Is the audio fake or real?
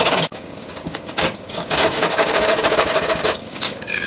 fake